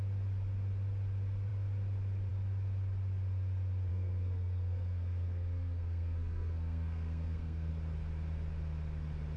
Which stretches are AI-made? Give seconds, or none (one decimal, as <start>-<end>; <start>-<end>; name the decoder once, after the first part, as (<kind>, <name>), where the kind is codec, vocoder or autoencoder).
3.9-7.7 (codec, SNAC)